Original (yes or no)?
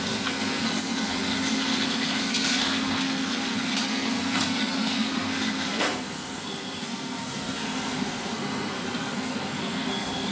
no